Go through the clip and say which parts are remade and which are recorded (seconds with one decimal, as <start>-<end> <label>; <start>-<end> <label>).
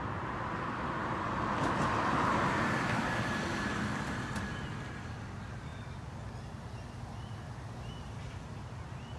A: 0.0-9.2 recorded